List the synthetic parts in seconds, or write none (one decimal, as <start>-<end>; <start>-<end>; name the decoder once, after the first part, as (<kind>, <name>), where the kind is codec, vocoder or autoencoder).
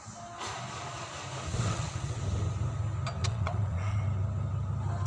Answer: 1.5-2.2 (vocoder, WaveNeXt); 3.2-4.0